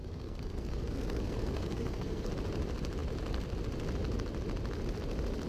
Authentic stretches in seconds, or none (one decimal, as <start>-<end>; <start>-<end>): 2.3-5.5

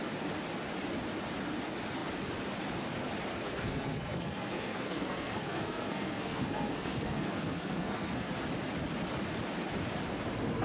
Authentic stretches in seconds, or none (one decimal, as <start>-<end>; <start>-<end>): 0.0-3.3; 8.3-10.6

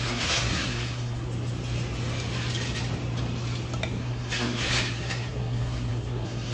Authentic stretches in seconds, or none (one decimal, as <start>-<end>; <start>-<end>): 1.3-3.9

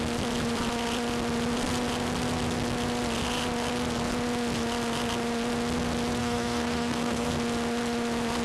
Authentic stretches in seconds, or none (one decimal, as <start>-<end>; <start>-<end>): 0.0-6.2; 7.3-8.4

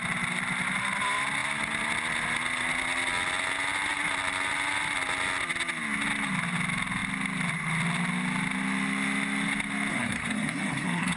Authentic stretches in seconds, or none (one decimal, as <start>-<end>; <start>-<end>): 0.0-9.9

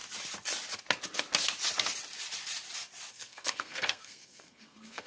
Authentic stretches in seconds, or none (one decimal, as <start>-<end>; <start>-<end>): 0.0-3.1

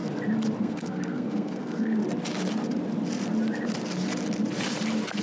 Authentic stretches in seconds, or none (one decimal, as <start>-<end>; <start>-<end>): 0.0-0.6; 2.0-5.2